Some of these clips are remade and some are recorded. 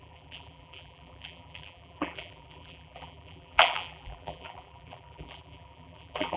remade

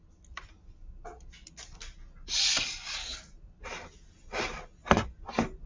recorded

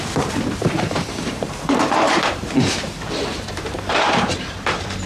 remade